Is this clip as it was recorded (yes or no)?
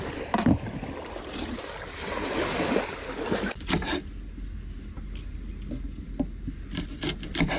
yes